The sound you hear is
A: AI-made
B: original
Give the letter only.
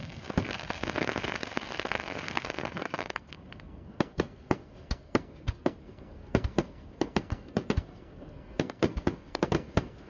A